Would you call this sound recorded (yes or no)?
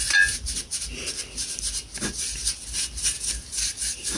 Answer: yes